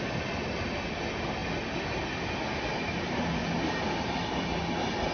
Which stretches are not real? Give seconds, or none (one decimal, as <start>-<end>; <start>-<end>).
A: none